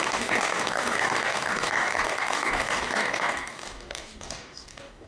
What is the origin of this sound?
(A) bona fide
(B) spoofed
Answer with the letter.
B